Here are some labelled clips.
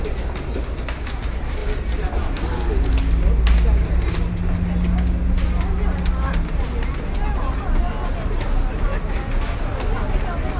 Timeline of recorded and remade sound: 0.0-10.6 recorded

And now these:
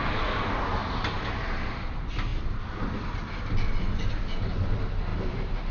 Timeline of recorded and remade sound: 0.0-0.8 recorded; 0.8-1.9 remade; 1.9-5.7 recorded

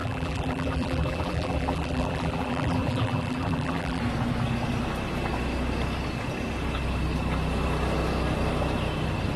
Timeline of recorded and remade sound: 0.0-4.0 remade; 4.0-9.4 recorded